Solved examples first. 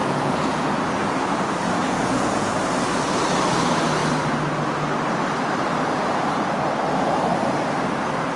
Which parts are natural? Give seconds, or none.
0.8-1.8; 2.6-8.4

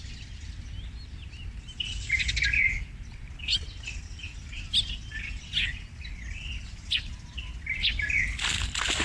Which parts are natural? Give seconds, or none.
0.0-9.0

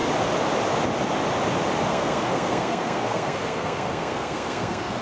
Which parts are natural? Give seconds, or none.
0.0-1.9